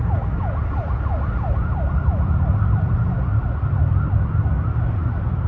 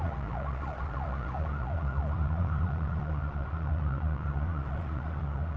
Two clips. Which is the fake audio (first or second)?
second